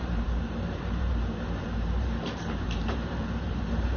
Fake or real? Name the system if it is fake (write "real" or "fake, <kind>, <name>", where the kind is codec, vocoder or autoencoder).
fake, vocoder, BigVGAN v2